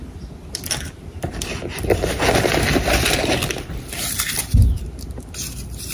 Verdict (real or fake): real